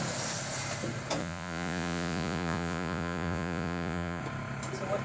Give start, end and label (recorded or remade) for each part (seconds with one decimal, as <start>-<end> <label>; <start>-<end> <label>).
0.0-1.2 recorded; 1.2-4.2 remade; 4.2-5.0 recorded